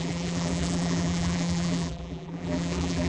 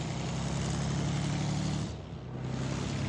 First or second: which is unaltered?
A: second